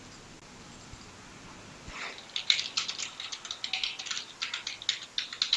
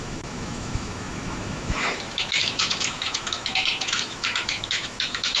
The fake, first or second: second